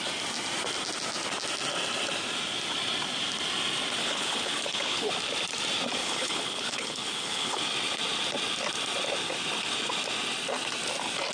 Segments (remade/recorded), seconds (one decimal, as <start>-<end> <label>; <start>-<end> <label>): 0.0-4.0 recorded; 4.0-5.1 remade; 5.1-6.0 recorded; 6.0-7.6 remade; 7.6-11.3 recorded